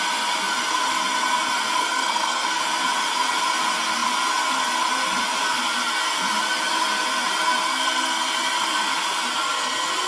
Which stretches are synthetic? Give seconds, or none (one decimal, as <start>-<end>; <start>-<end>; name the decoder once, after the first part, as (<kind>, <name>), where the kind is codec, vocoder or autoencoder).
1.8-2.6 (codec, SNAC); 7.7-8.3